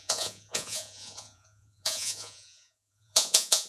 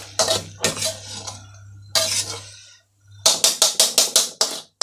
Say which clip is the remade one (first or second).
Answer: first